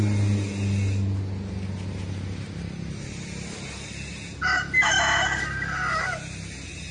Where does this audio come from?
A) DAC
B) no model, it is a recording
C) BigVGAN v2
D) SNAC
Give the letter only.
B